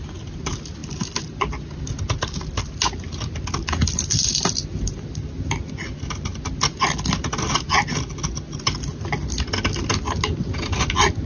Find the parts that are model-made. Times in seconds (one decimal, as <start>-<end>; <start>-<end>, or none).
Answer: none